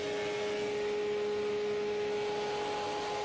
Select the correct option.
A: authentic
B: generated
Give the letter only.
A